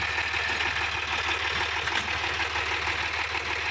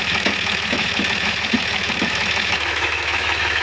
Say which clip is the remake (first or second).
second